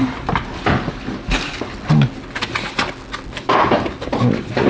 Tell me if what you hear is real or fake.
real